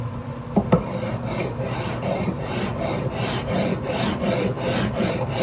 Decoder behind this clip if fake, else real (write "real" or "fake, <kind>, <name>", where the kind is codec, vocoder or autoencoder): fake, vocoder, BigVGAN v2